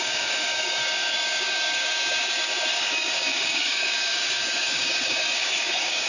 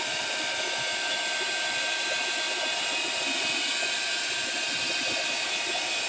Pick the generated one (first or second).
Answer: first